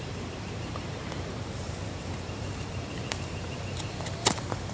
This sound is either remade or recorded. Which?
remade